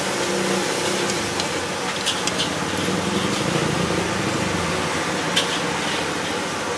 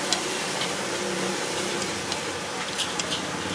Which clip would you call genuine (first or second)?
first